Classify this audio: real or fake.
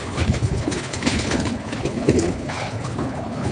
fake